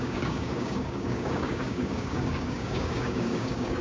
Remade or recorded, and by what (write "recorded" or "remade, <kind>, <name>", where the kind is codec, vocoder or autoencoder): remade, codec, DAC